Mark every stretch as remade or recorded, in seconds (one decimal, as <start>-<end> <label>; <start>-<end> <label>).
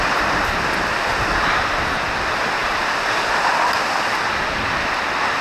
0.0-5.4 recorded